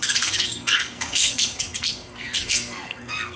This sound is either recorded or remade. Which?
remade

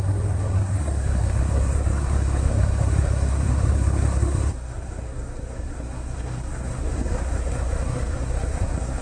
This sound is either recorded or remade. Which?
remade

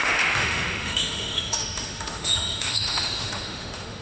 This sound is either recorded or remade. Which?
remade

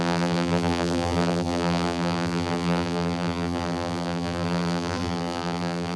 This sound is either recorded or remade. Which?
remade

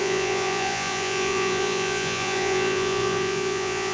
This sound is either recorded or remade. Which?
remade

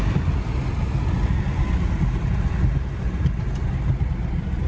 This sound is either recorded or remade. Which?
recorded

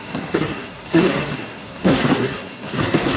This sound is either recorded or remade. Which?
remade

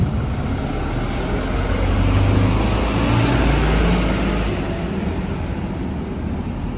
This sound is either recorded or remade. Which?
recorded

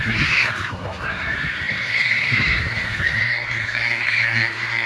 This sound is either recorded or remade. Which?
remade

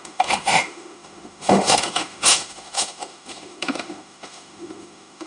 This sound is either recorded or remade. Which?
remade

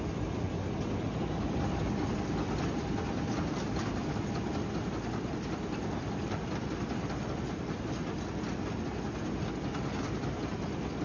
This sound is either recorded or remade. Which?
recorded